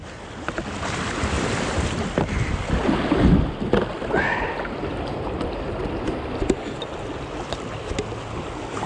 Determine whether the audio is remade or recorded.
recorded